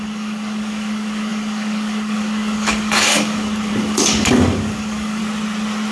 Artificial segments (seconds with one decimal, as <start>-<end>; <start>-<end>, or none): 0.0-5.2